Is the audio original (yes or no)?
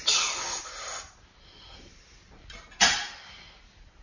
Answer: yes